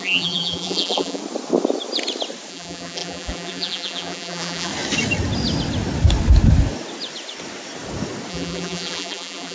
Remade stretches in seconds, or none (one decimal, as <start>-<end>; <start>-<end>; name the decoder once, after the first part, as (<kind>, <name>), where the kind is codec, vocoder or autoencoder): 0.0-1.2 (vocoder, BigVGAN v2); 2.5-4.7; 8.3-9.5